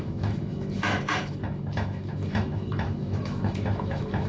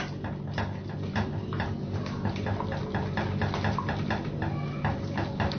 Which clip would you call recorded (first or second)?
second